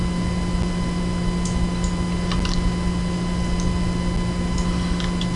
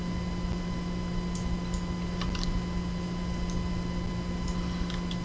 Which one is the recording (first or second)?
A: first